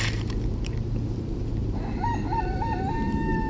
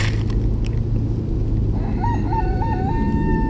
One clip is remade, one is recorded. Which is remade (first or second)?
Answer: first